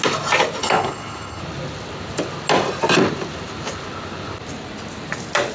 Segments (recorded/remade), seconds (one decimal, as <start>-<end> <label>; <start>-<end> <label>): 0.0-0.6 recorded; 0.6-1.4 remade; 1.4-5.5 recorded